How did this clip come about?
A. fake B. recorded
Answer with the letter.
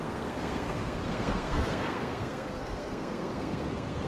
A